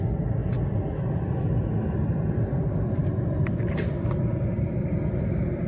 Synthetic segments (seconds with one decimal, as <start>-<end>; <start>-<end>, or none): 3.0-5.2